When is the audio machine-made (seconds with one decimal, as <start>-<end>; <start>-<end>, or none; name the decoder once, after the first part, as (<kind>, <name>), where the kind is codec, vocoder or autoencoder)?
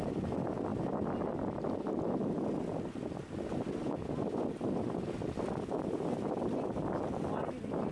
none